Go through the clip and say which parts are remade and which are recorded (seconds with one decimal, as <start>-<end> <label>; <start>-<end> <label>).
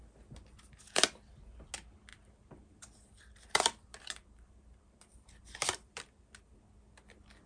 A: 0.0-2.1 recorded; 2.1-6.6 remade; 6.6-7.5 recorded